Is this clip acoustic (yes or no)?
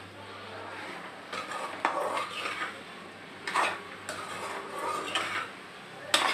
yes